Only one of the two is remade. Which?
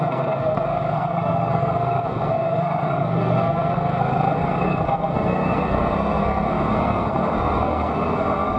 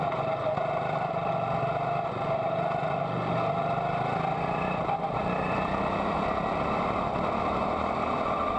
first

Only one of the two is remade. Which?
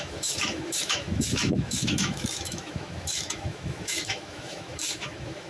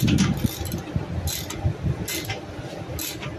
first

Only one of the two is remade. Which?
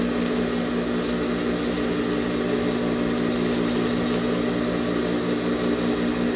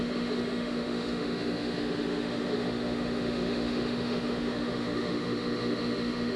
second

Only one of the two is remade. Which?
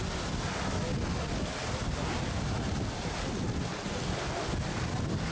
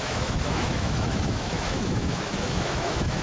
second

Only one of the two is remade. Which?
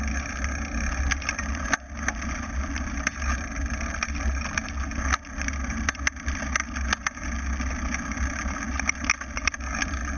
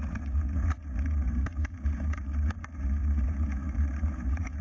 second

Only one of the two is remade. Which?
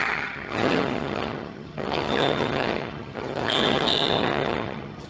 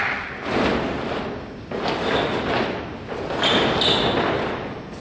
first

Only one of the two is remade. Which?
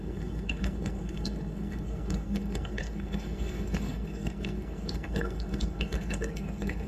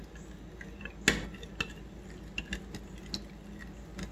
first